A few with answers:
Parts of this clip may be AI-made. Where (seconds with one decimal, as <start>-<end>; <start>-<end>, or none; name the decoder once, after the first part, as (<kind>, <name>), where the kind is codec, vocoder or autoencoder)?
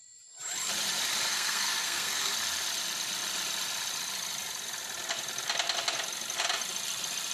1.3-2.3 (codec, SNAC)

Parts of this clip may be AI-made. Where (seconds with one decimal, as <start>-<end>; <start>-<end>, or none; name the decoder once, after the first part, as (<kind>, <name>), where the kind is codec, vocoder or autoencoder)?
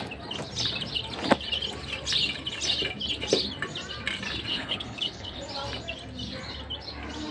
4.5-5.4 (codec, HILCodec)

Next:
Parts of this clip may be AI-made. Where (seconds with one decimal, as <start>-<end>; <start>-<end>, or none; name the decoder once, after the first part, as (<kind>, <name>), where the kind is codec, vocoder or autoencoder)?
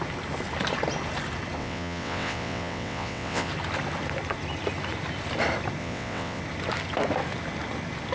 1.6-3.5 (vocoder, WaveNeXt); 5.8-6.4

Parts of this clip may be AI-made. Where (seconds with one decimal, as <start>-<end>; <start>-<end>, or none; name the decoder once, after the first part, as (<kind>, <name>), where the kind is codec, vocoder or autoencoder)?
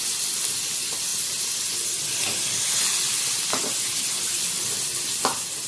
none